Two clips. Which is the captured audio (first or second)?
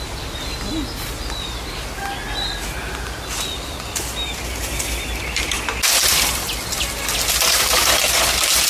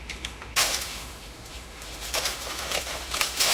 first